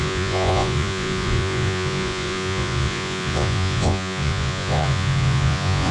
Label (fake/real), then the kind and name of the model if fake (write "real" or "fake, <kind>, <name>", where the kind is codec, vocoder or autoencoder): fake, vocoder, Vocos